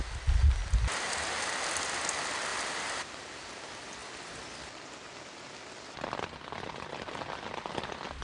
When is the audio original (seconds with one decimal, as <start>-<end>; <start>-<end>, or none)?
0.0-2.5; 3.4-8.2